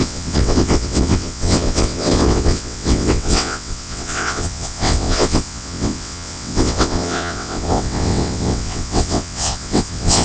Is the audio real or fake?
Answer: fake